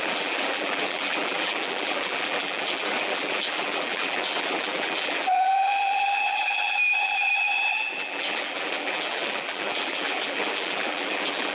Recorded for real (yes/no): no